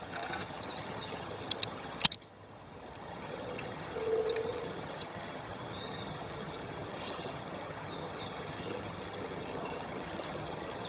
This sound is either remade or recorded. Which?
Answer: remade